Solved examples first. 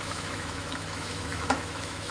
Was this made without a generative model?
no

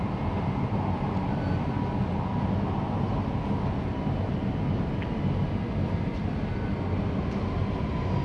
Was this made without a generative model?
yes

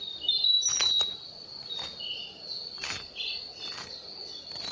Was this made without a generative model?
yes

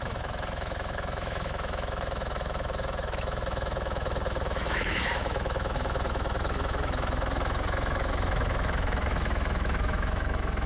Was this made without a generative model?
no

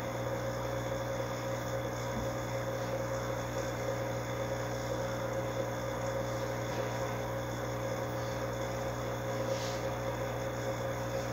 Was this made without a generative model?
yes